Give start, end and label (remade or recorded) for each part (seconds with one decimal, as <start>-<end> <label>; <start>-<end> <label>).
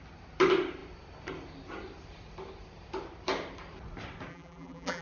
0.0-4.3 recorded; 4.3-5.0 remade